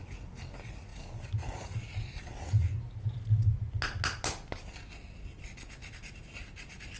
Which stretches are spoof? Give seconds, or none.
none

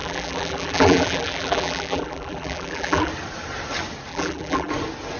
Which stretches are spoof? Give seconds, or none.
0.0-3.1 (vocoder, BigVGAN v2); 4.1-4.7

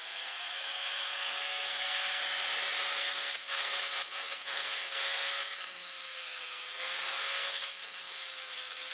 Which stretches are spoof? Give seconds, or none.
0.0-2.2 (codec, SNAC); 3.0-8.9

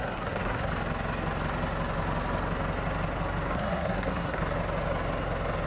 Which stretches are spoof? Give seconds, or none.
0.0-0.7 (codec, SNAC); 3.5-4.4